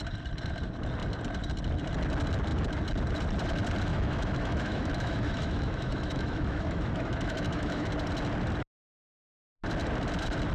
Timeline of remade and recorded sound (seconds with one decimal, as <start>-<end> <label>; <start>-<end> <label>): 0.0-3.9 recorded; 3.9-7.9 remade; 7.9-10.5 recorded